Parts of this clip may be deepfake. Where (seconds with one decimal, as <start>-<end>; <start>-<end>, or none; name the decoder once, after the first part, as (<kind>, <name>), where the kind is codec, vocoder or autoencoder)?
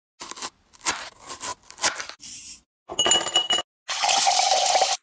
none